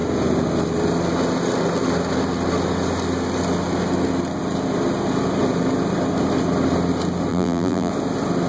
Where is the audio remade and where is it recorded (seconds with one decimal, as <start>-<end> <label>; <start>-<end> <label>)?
0.0-7.3 recorded; 7.3-7.9 remade; 7.9-8.5 recorded